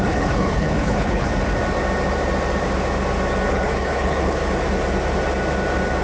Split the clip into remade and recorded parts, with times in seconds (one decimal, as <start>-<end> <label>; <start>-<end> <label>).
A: 0.0-1.3 remade; 1.3-3.5 recorded; 3.5-4.4 remade; 4.4-6.0 recorded